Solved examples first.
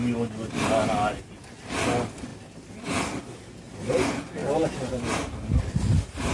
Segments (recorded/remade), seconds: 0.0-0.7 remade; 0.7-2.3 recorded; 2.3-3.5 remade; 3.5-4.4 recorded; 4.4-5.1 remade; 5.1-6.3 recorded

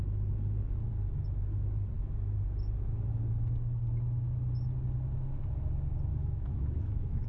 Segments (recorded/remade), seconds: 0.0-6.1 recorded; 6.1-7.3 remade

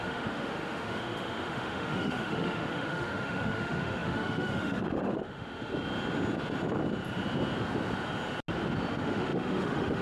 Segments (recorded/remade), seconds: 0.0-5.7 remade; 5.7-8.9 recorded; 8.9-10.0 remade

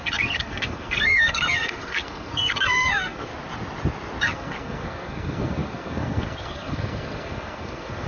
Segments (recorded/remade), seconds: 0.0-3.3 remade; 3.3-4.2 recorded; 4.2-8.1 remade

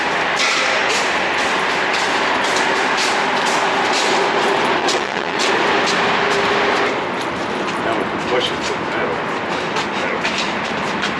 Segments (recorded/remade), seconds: 0.0-4.8 recorded; 4.8-5.5 remade; 5.5-11.2 recorded